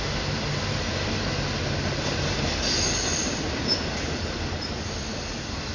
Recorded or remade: recorded